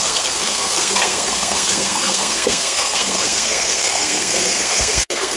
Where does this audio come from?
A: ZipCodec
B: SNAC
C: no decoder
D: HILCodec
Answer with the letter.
B